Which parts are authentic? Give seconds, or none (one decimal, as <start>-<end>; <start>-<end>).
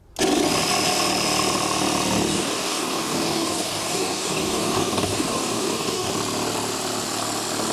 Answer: 0.0-2.3; 6.1-7.7